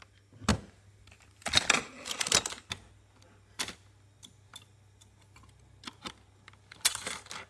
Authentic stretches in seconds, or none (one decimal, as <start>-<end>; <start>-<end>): 0.0-7.5